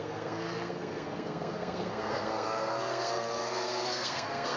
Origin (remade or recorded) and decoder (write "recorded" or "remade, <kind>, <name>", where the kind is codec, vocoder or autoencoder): remade, codec, SNAC